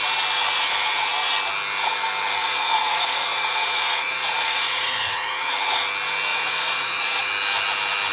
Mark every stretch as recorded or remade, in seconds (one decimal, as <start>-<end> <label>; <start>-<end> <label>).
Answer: 0.0-2.4 recorded; 2.4-5.5 remade; 5.5-6.3 recorded; 6.3-7.3 remade; 7.3-8.1 recorded